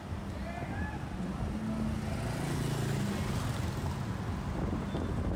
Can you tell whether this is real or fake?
real